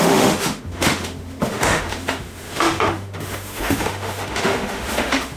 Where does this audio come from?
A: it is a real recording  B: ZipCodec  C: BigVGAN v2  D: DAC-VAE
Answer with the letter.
D